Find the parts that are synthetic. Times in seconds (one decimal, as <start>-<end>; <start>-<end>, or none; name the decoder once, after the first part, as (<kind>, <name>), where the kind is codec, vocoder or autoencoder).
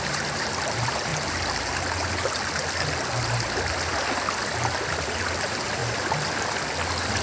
0.0-1.1 (vocoder, BigVGAN v2); 4.9-5.8